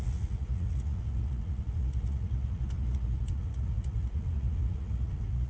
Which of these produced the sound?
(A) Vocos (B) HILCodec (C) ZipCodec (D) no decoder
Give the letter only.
A